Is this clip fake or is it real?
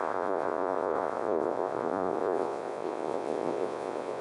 fake